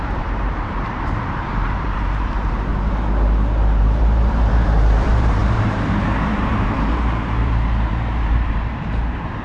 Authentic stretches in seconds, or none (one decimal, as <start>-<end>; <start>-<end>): 2.7-3.8